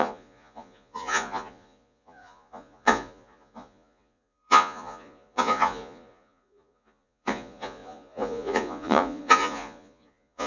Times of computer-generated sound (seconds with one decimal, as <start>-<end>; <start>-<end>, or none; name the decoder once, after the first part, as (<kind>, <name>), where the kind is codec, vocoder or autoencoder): 0.0-10.5 (vocoder, Vocos)